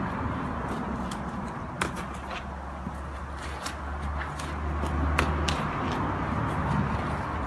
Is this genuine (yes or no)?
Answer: yes